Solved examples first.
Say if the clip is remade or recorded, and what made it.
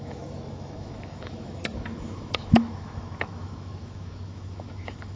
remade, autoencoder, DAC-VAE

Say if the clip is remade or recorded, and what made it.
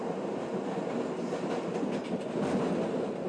recorded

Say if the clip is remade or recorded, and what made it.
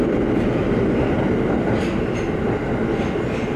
recorded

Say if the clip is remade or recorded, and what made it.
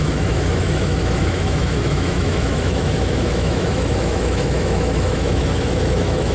remade, autoencoder, DAC-VAE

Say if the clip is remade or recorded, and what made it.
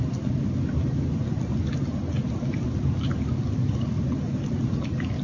recorded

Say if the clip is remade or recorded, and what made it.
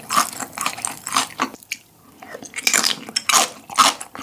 recorded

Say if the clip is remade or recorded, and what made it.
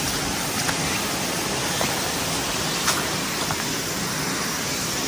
recorded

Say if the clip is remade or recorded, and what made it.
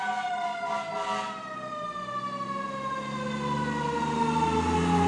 recorded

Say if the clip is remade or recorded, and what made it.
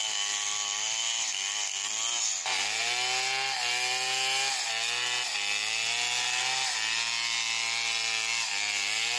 recorded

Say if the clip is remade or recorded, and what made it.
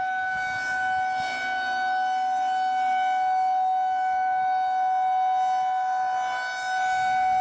recorded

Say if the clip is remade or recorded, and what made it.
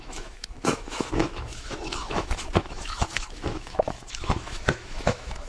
remade, autoencoder, DAC-VAE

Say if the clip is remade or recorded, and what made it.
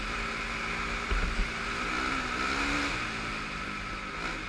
recorded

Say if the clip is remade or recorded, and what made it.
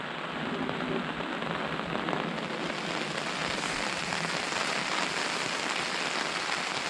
recorded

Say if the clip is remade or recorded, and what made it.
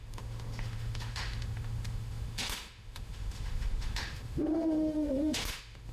remade, autoencoder, DAC-VAE